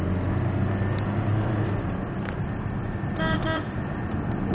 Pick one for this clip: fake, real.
real